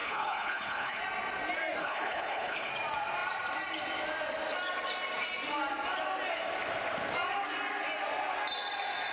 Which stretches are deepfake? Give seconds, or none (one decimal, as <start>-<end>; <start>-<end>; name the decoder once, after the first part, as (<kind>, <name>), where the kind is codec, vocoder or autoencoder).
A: 0.0-1.0 (codec, HILCodec); 1.8-2.7